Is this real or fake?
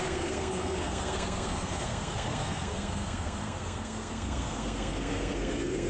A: fake